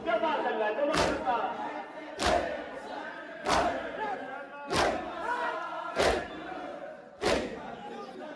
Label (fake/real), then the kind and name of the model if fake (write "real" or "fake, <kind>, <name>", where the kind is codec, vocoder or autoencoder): real